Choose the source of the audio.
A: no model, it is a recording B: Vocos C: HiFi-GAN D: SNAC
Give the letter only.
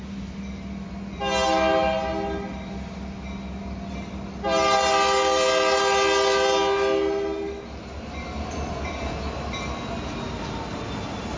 A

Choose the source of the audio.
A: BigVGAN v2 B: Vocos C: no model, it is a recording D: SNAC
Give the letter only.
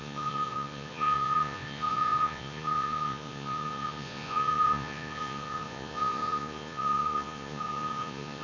B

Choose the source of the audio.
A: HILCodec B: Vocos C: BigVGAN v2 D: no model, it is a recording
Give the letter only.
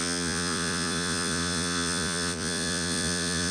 B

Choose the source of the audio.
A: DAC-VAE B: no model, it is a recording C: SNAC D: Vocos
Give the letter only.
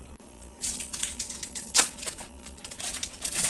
D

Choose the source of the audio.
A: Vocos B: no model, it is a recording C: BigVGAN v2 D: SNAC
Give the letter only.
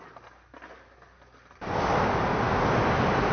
B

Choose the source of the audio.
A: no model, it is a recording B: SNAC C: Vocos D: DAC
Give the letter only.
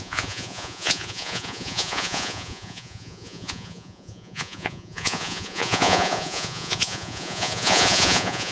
C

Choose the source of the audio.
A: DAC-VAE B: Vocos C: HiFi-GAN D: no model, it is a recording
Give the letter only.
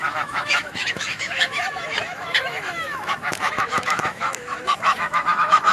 A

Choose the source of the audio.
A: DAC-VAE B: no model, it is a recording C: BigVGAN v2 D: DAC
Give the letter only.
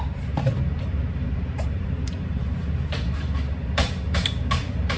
C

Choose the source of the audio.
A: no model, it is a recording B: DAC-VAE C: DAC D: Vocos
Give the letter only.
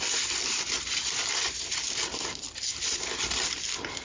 A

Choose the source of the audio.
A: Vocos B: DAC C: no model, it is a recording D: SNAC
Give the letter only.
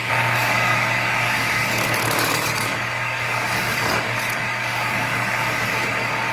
B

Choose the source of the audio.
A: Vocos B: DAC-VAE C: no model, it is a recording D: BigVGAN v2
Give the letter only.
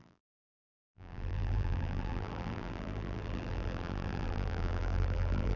D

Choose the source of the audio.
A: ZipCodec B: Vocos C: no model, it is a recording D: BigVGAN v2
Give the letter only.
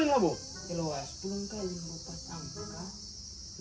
C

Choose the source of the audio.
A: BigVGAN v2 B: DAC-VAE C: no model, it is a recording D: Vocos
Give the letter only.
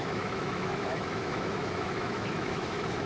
B